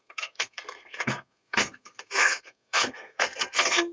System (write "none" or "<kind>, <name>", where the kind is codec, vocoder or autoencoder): codec, SNAC